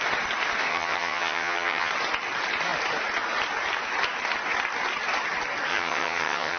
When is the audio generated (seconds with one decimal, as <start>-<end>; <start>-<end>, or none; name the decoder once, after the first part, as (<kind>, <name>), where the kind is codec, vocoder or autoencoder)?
0.7-1.9 (vocoder, HiFi-GAN); 5.7-6.6